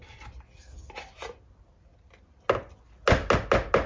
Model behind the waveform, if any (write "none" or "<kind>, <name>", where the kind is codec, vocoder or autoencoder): none